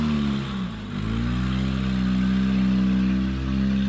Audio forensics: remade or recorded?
recorded